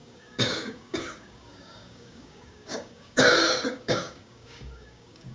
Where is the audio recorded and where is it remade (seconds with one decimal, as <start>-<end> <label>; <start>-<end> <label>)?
0.0-5.3 remade